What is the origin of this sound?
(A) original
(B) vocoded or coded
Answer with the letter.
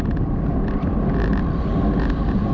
A